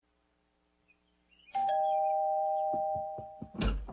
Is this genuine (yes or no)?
yes